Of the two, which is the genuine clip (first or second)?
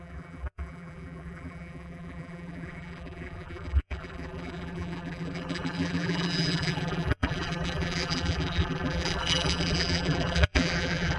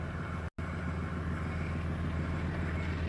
second